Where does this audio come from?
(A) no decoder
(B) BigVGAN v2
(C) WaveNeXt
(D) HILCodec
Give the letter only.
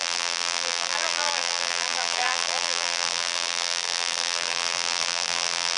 B